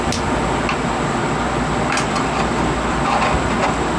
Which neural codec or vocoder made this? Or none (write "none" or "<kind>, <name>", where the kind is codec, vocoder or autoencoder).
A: none